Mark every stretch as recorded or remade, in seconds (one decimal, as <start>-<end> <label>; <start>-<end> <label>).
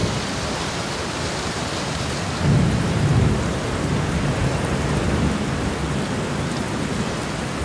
0.0-3.8 remade; 3.8-7.6 recorded